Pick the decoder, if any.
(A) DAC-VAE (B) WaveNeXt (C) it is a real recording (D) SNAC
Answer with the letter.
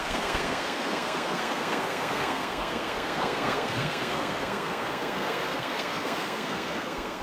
D